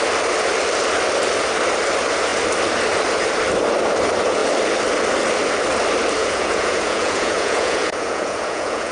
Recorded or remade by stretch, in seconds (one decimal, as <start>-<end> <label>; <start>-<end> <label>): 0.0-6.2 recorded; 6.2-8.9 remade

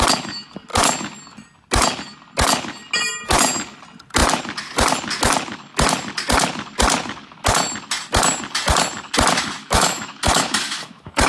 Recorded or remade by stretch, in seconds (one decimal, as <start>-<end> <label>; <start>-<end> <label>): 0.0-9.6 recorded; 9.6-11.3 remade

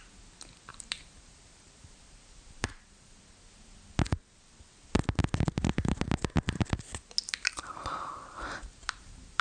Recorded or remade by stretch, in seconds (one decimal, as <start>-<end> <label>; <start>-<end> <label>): 0.0-0.7 recorded; 0.7-3.2 remade; 3.2-7.2 recorded; 7.2-9.4 remade

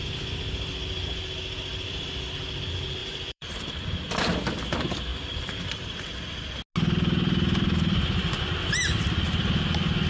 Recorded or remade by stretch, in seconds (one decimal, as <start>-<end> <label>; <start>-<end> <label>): 0.0-1.7 recorded; 1.7-2.3 remade; 2.3-3.0 recorded; 3.0-3.5 remade; 3.5-5.1 recorded; 5.1-5.6 remade; 5.6-10.1 recorded

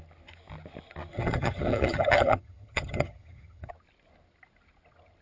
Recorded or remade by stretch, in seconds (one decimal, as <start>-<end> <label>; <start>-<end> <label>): 0.0-1.1 recorded; 1.1-3.7 remade; 3.7-5.2 recorded

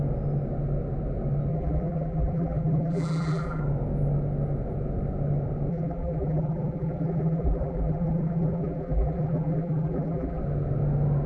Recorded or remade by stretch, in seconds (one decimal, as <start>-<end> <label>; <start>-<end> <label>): 0.0-1.5 recorded; 1.5-3.6 remade; 3.6-5.7 recorded; 5.7-10.4 remade; 10.4-11.3 recorded

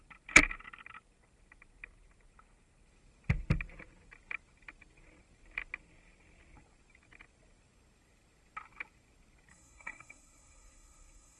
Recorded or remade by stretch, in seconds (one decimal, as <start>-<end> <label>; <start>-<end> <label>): 0.0-9.5 recorded; 9.5-11.4 remade

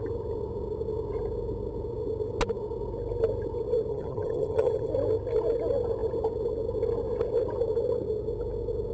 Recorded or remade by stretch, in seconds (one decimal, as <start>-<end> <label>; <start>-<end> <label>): 0.0-3.9 recorded; 3.9-4.9 remade; 4.9-8.9 recorded